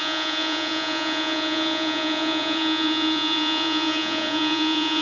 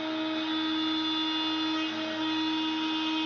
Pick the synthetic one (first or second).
first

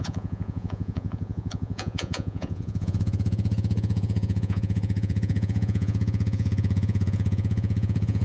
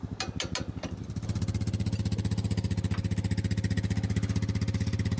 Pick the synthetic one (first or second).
first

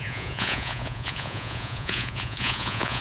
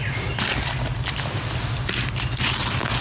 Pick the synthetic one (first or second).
first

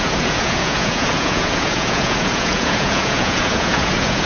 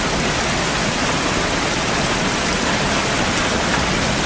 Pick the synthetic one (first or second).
first